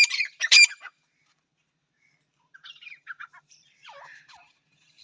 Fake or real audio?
fake